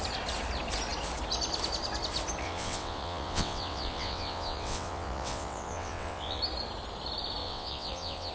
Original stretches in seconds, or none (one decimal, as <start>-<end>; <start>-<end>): 0.0-2.4; 6.4-7.4